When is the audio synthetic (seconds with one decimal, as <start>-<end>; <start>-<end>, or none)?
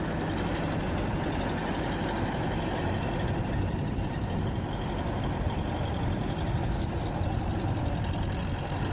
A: none